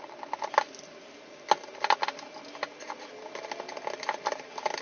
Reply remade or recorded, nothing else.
recorded